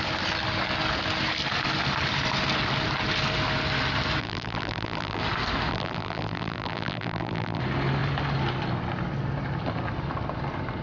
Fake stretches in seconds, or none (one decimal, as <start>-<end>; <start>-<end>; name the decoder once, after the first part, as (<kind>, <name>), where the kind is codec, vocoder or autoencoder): 4.2-5.2 (vocoder, BigVGAN v2); 5.7-7.6